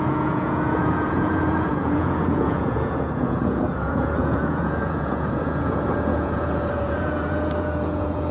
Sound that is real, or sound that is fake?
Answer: fake